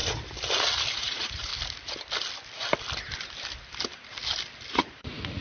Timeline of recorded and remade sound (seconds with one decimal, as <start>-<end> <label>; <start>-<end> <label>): 0.0-0.9 recorded; 0.9-1.5 remade; 1.5-4.7 recorded; 4.7-5.4 remade